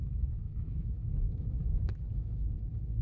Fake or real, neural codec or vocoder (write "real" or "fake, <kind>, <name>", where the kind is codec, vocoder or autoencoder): fake, autoencoder, DAC-VAE